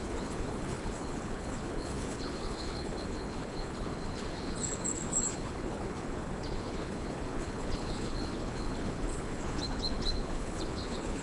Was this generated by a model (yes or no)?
yes